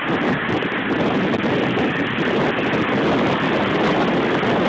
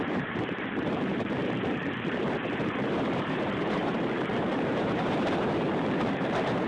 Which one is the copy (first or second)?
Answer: second